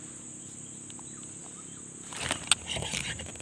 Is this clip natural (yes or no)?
yes